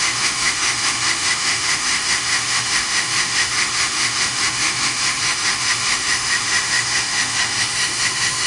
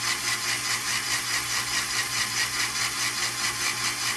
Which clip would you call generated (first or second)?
first